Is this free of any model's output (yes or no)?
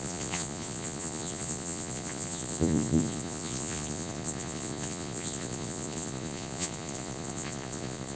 no